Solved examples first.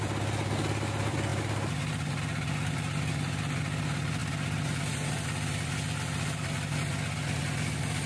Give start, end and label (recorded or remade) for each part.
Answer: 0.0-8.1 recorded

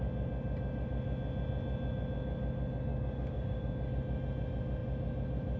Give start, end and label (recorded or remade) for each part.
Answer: 0.0-2.9 recorded; 2.9-3.9 remade; 3.9-5.6 recorded

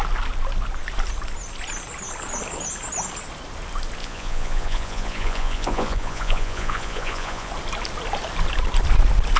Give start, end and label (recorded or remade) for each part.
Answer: 0.0-4.0 recorded; 4.0-7.5 remade; 7.5-9.4 recorded

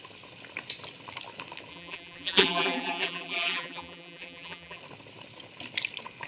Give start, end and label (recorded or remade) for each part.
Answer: 0.0-1.7 recorded; 1.7-4.8 remade; 4.8-6.3 recorded

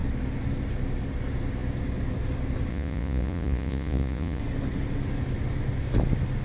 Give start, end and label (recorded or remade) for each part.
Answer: 0.0-2.7 recorded; 2.7-4.4 remade; 4.4-6.4 recorded

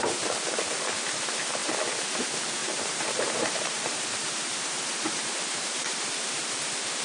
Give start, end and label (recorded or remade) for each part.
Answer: 0.0-2.6 recorded; 2.6-6.1 remade; 6.1-7.0 recorded